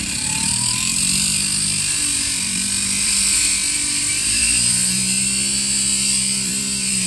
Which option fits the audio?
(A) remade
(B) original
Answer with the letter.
A